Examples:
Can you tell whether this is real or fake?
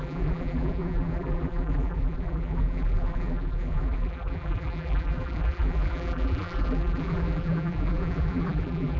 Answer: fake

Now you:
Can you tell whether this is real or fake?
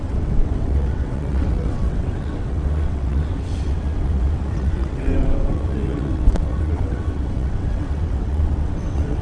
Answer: fake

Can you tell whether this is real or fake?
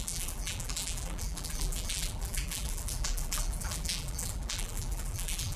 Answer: fake